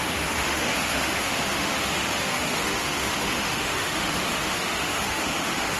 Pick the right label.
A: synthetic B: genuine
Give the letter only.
A